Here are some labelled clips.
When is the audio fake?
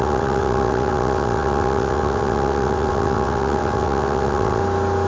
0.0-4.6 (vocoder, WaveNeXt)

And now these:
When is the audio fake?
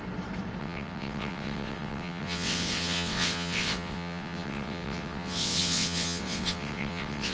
0.6-7.3 (vocoder, WaveNeXt)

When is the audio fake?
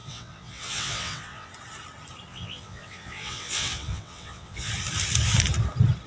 0.0-1.5 (vocoder, WaveNeXt); 2.3-4.7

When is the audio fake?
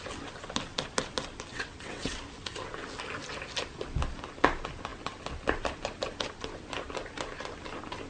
1.5-2.2 (vocoder, WaveNeXt)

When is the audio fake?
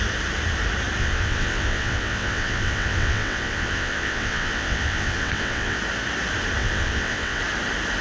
1.0-5.8 (vocoder, WaveNeXt); 6.6-7.4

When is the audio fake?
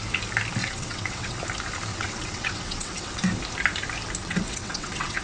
0.6-1.4 (vocoder, WaveNeXt); 1.9-3.2; 4.2-5.2